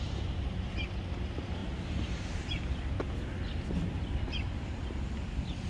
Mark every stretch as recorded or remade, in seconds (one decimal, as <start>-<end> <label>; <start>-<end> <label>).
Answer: 0.0-5.7 recorded